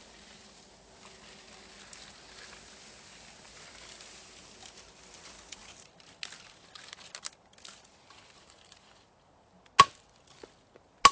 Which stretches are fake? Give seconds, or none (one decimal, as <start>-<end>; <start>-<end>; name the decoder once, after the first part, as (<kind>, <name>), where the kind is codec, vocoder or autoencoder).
none